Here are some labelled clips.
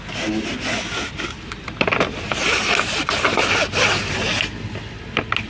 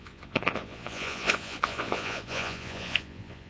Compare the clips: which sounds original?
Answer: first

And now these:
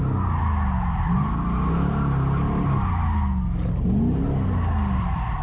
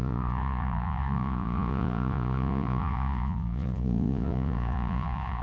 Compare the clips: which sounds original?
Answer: first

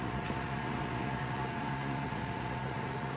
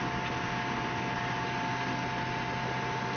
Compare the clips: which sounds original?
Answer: second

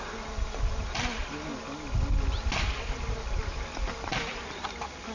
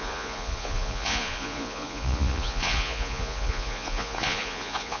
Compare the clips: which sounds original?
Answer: first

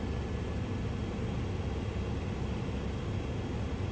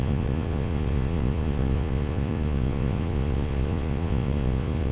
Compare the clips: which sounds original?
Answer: first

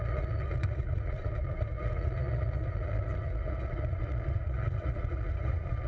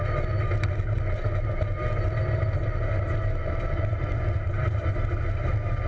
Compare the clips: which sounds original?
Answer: second